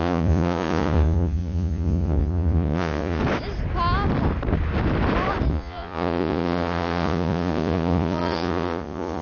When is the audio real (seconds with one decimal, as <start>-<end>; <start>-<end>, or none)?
3.2-5.5